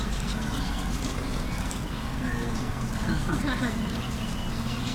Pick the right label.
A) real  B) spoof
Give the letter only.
B